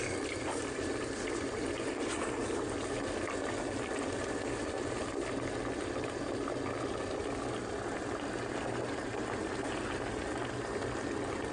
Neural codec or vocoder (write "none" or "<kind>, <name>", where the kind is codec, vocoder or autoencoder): none